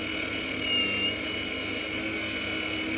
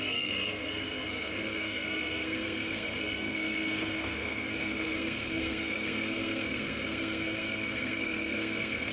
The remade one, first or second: second